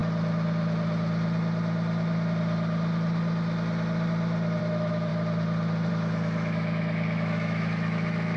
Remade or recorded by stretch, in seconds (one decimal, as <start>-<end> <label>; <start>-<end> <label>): 0.0-4.6 recorded; 4.6-5.1 remade; 5.1-5.9 recorded; 5.9-8.4 remade